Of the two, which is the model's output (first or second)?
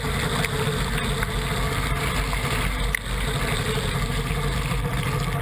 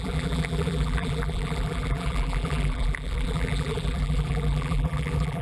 second